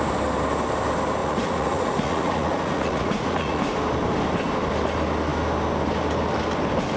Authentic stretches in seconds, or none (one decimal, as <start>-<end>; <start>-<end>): 0.0-1.2; 3.6-7.0